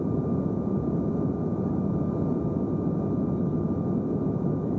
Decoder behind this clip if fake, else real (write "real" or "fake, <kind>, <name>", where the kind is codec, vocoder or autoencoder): real